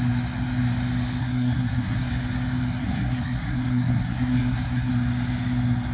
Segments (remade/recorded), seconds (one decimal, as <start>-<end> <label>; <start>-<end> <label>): 0.0-1.2 recorded; 1.2-2.1 remade; 2.1-2.8 recorded; 2.8-4.9 remade; 4.9-5.9 recorded